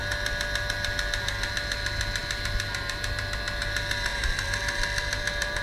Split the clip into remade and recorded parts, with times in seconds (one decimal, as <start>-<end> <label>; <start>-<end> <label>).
0.0-4.1 recorded; 4.1-5.6 remade